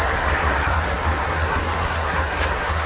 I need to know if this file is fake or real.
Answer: fake